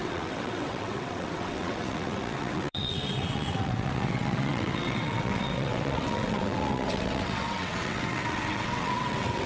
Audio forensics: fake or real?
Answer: fake